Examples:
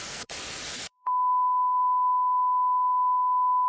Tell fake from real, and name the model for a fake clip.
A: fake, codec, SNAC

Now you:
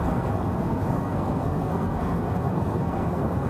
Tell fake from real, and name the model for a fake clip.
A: fake, codec, SNAC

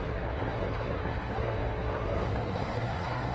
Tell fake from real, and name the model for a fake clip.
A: fake, codec, SNAC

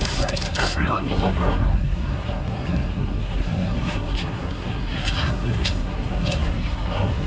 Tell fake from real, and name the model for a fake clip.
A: fake, codec, SNAC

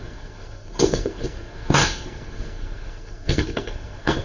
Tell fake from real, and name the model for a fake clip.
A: fake, codec, SNAC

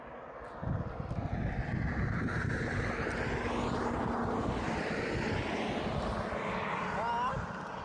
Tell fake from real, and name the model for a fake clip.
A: real